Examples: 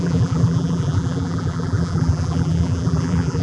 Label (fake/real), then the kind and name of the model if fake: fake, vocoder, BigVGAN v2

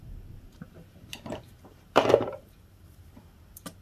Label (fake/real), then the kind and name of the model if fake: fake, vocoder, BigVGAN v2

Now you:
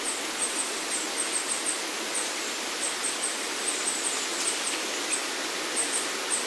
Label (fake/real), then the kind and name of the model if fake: real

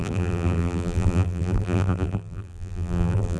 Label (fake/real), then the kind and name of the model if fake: fake, vocoder, BigVGAN v2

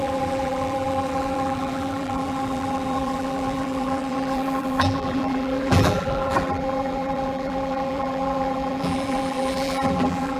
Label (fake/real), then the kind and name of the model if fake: fake, vocoder, BigVGAN v2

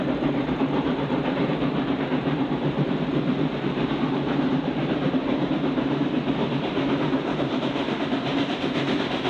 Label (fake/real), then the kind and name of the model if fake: fake, vocoder, BigVGAN v2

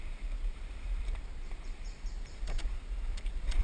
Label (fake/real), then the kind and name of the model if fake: fake, vocoder, BigVGAN v2